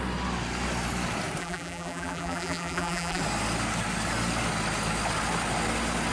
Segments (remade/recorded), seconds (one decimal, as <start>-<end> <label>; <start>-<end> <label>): 0.0-1.4 recorded; 1.4-3.2 remade; 3.2-6.1 recorded